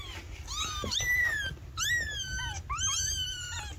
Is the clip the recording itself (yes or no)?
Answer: yes